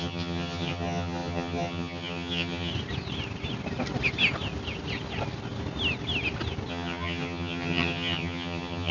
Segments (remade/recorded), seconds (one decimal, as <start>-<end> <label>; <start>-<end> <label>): 0.0-2.7 remade; 2.7-6.7 recorded; 6.7-8.9 remade

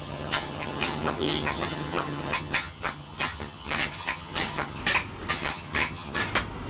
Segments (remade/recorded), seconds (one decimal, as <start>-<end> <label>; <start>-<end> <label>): 0.0-4.8 remade; 4.8-5.3 recorded; 5.3-6.2 remade; 6.2-6.7 recorded

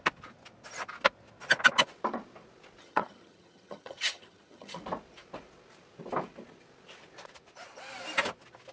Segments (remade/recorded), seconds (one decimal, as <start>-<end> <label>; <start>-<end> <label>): 0.0-2.8 recorded; 2.8-4.8 remade; 4.8-8.7 recorded

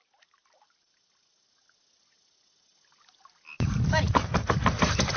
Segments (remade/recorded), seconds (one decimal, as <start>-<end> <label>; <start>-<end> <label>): 0.0-5.2 recorded

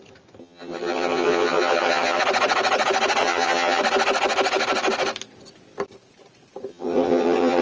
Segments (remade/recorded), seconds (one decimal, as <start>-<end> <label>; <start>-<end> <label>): 0.0-0.4 recorded; 0.4-2.2 remade; 2.2-3.2 recorded; 3.2-3.8 remade; 3.8-6.7 recorded; 6.7-7.6 remade